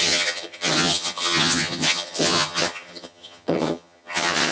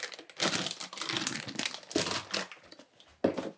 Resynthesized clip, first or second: first